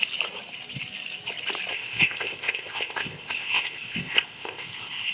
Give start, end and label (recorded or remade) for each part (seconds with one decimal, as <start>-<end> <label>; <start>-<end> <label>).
0.0-1.7 recorded; 1.7-5.1 remade